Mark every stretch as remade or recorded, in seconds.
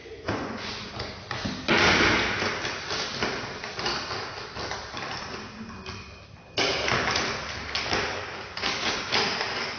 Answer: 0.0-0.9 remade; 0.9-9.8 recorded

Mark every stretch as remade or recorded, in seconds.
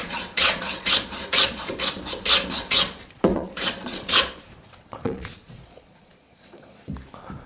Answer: 0.0-1.7 remade; 1.7-2.5 recorded; 2.5-6.9 remade; 6.9-7.5 recorded